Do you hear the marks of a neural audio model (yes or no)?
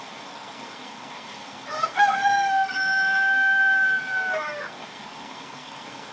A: yes